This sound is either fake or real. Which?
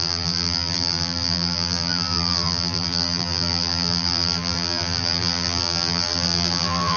fake